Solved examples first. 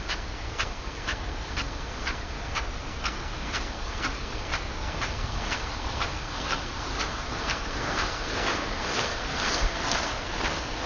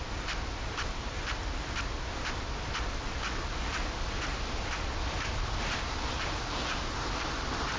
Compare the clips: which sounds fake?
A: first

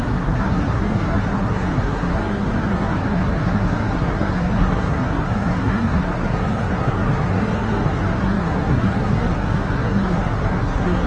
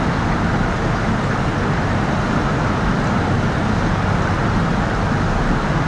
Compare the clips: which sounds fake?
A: first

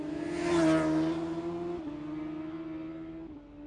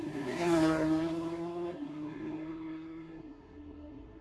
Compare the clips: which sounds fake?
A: second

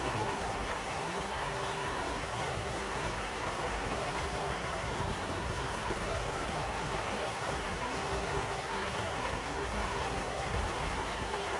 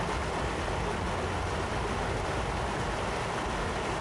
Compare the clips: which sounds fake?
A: first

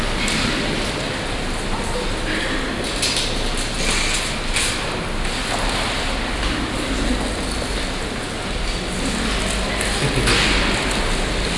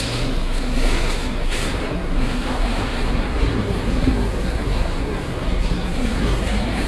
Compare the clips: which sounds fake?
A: second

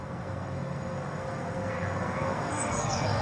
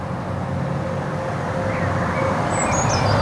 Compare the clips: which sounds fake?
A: first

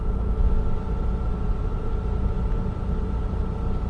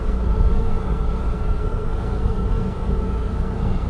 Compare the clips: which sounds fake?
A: second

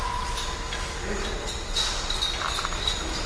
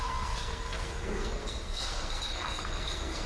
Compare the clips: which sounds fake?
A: second